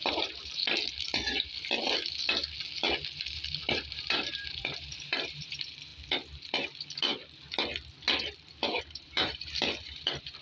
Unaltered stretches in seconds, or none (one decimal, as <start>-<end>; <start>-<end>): 0.6-3.7; 5.9-8.8